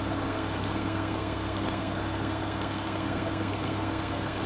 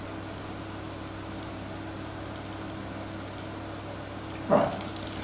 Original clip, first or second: second